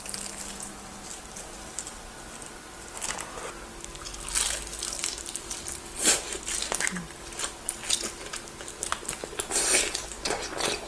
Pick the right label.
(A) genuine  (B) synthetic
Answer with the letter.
A